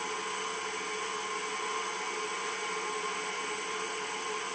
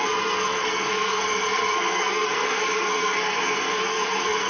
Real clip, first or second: first